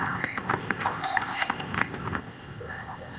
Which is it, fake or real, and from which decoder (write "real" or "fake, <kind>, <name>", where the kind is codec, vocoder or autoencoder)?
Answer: fake, codec, ZipCodec